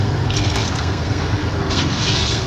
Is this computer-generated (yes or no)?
yes